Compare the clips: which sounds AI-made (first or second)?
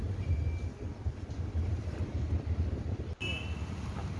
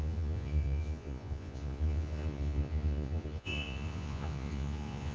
second